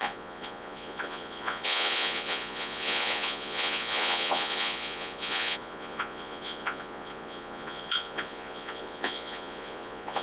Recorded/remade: remade